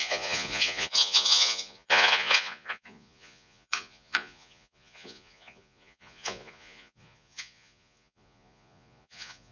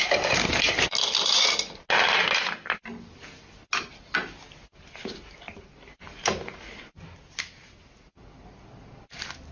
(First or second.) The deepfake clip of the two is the first